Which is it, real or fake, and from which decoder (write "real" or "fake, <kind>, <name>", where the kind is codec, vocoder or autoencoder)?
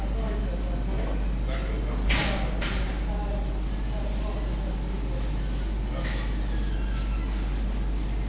real